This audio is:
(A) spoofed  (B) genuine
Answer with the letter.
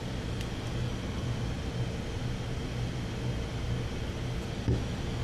B